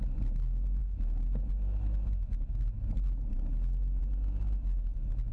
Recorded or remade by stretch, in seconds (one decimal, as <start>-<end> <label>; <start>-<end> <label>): 0.0-5.3 recorded